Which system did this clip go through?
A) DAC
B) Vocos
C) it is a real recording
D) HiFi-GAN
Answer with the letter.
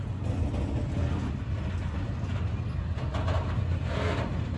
C